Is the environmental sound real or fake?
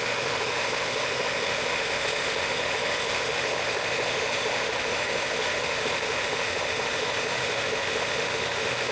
fake